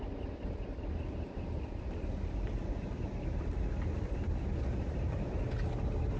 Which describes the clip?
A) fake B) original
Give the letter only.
B